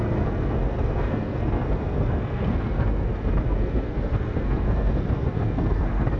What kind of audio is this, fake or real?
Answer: fake